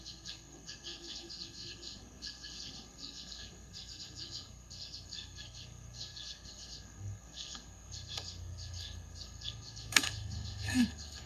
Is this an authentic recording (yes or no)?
no